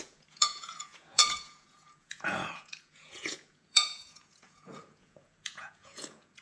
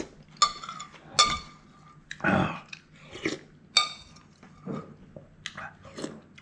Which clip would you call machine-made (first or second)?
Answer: first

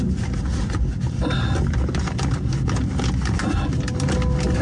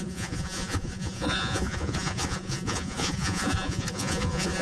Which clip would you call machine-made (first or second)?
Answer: second